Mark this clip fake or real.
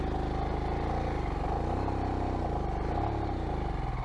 real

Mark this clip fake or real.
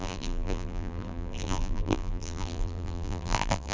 fake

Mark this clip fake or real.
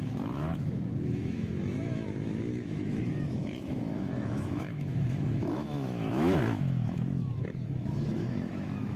fake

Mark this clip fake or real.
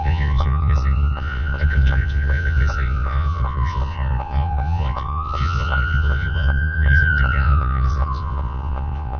fake